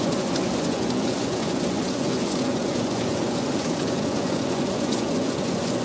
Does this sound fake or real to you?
fake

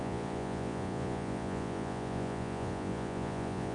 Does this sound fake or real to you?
fake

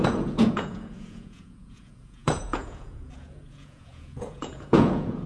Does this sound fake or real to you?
fake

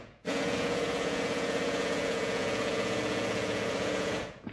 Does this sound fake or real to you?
fake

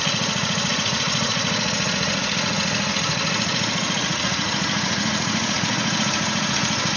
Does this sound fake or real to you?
fake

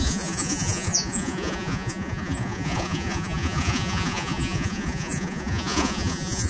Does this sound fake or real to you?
fake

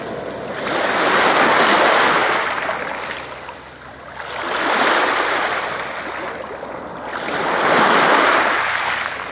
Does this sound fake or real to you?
real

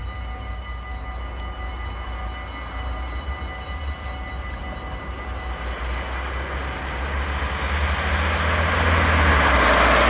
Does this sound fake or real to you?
real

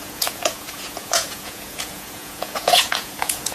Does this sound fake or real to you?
fake